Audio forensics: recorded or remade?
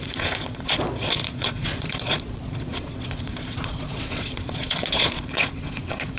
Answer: remade